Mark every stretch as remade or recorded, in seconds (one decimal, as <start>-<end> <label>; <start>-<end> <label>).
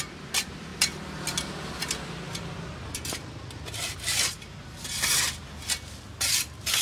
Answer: 0.0-0.7 remade; 0.7-2.9 recorded; 2.9-5.4 remade; 5.4-6.8 recorded